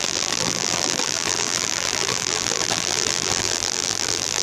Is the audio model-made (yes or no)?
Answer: yes